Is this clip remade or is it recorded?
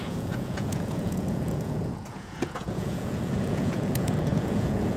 remade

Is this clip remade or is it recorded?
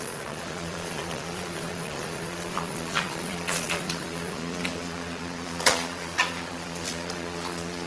remade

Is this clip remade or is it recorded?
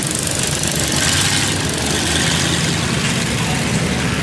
recorded